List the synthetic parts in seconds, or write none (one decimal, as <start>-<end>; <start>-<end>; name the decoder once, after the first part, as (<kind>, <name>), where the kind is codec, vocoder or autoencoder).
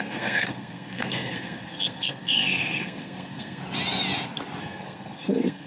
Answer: 0.0-3.6 (codec, SNAC); 4.6-5.7